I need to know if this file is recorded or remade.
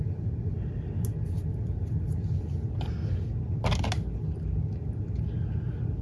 recorded